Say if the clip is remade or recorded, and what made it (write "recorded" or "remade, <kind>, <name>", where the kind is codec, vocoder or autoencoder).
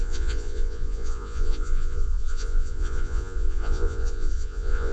remade, vocoder, Vocos